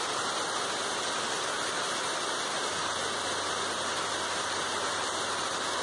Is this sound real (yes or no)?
yes